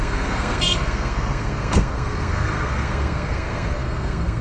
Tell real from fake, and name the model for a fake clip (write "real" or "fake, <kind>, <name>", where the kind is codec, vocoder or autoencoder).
fake, codec, SNAC